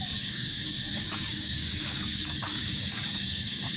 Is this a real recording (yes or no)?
no